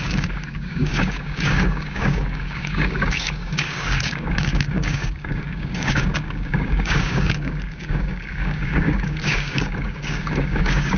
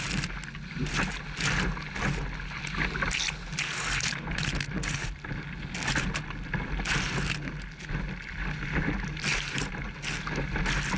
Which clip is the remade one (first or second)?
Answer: first